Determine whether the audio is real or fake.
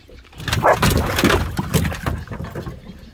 real